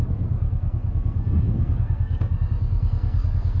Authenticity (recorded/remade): remade